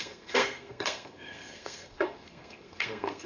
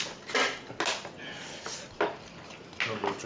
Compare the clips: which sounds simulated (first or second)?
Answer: first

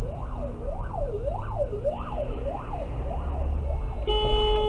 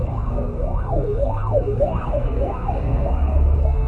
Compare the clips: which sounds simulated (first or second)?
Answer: second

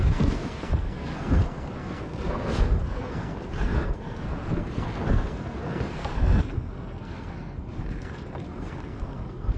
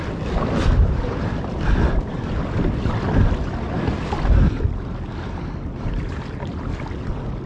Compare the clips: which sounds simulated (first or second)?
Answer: first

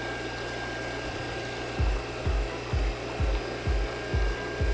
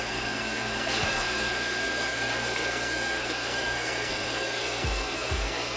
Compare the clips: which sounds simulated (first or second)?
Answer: second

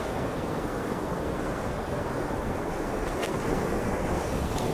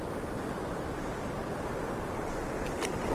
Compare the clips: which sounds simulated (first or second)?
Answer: first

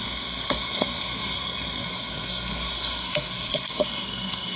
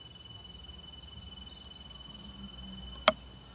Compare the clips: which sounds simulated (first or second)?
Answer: first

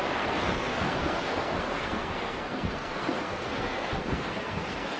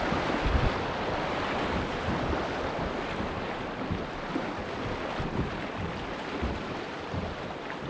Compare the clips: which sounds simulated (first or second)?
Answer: first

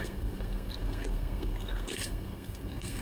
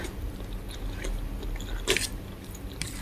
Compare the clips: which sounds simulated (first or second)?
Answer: first